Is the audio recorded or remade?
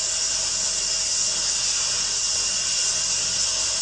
recorded